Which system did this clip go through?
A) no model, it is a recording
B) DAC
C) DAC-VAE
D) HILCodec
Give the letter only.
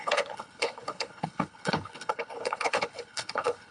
D